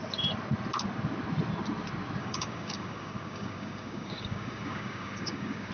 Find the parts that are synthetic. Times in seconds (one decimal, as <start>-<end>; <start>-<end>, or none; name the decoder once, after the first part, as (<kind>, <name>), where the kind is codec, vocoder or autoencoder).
2.2-5.7 (codec, DAC)